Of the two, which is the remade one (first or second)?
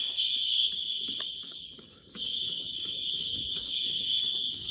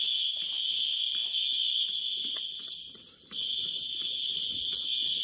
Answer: first